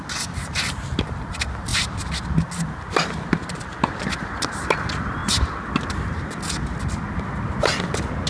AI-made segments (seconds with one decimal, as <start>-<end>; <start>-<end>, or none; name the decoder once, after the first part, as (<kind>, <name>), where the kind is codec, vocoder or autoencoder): none